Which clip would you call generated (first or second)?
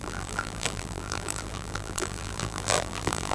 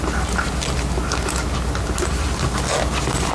first